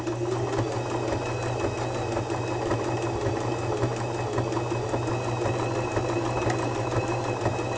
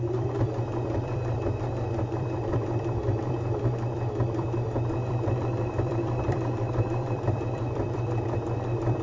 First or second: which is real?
first